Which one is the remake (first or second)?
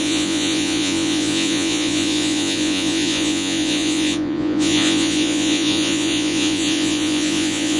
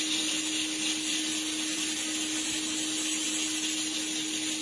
first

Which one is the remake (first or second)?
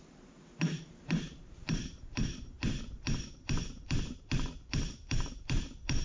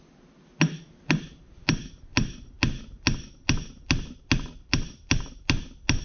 first